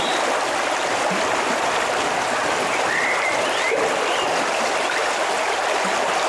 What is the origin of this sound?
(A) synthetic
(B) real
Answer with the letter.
B